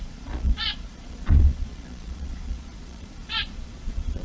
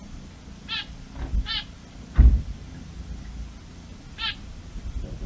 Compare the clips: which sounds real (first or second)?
second